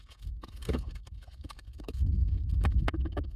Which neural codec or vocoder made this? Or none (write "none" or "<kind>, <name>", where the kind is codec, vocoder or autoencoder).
codec, SNAC